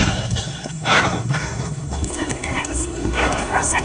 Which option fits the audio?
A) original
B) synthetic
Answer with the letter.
B